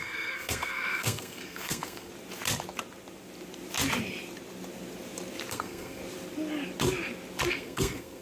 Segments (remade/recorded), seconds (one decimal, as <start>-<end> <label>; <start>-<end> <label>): 0.0-2.1 remade; 2.1-5.5 recorded; 5.5-6.0 remade; 6.0-7.5 recorded; 7.5-8.2 remade